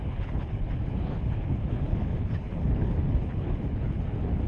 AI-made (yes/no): yes